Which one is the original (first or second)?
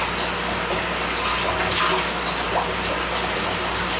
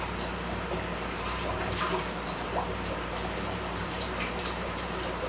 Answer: first